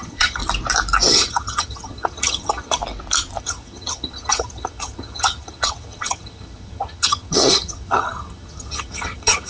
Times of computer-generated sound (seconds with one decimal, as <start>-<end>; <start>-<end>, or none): 0.0-0.4; 1.1-2.8; 3.4-9.5